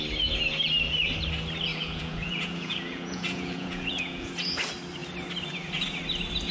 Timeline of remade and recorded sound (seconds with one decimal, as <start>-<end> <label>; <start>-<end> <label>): 0.0-1.7 recorded; 1.7-4.3 remade; 4.3-6.5 recorded

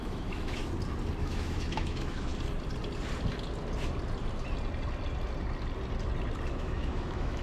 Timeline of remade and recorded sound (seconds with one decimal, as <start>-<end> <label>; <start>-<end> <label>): 0.0-0.6 remade; 0.6-1.2 recorded; 1.2-2.3 remade; 2.3-6.5 recorded; 6.5-7.4 remade

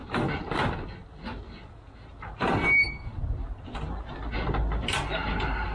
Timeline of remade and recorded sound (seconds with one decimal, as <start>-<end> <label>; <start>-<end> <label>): 0.0-5.7 recorded

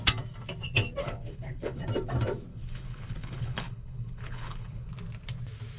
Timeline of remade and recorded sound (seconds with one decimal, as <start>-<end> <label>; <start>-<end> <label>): 0.0-1.0 recorded; 1.0-1.8 remade; 1.8-2.5 recorded; 2.5-4.9 remade; 4.9-5.8 recorded

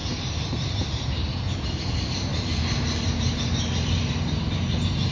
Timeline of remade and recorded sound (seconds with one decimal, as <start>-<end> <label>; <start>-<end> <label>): 0.0-0.8 remade; 0.8-2.3 recorded; 2.3-3.4 remade; 3.4-5.1 recorded

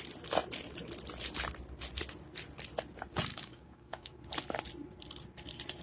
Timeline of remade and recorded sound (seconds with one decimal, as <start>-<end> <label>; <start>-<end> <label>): 0.0-3.3 recorded; 3.3-4.2 remade; 4.2-5.8 recorded

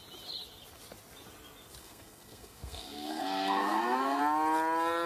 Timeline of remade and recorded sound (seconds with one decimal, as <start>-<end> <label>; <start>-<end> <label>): 0.0-1.8 recorded; 1.8-4.2 remade; 4.2-5.1 recorded

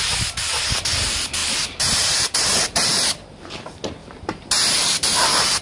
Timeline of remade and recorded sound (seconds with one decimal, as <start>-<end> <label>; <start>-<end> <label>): 0.0-1.4 recorded; 1.4-3.4 remade; 3.4-4.0 recorded; 4.0-5.6 remade